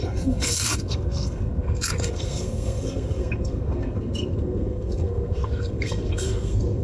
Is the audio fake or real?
fake